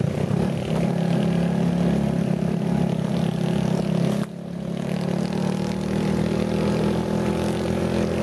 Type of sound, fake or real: real